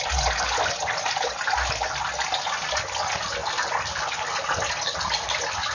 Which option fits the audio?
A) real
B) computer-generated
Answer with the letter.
A